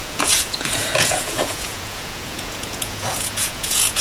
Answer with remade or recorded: remade